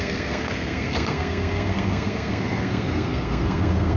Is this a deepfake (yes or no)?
yes